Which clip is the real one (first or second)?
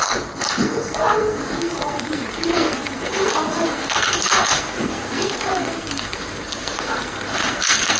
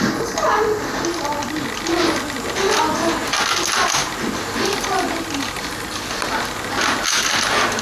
second